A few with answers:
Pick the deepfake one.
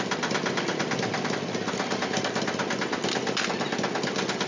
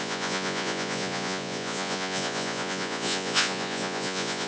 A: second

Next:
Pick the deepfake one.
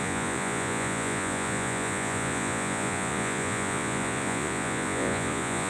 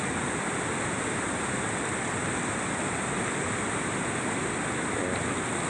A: first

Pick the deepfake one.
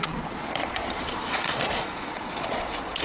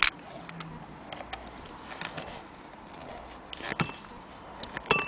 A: first